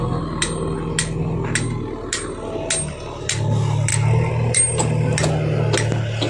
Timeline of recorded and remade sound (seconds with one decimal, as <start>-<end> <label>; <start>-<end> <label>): 0.0-6.3 recorded